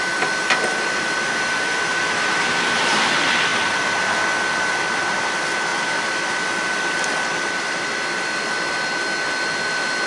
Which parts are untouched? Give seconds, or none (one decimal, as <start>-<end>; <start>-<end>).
0.0-10.1